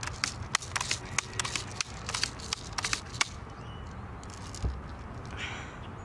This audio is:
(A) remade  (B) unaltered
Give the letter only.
B